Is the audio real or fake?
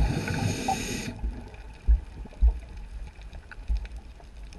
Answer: fake